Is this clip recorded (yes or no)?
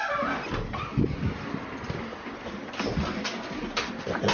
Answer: yes